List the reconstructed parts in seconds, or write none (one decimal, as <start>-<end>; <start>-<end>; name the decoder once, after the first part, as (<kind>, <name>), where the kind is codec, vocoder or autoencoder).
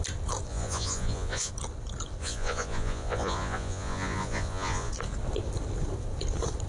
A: 0.5-1.5 (vocoder, Vocos); 2.2-4.9